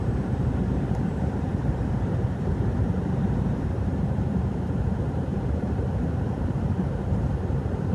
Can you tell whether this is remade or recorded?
remade